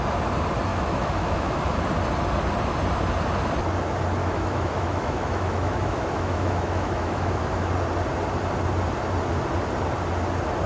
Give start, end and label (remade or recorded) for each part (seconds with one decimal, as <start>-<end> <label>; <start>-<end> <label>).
0.0-0.7 recorded; 0.7-1.8 remade; 1.8-4.2 recorded; 4.2-7.7 remade; 7.7-10.7 recorded